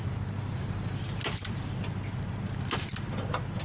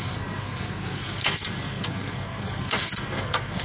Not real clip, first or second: second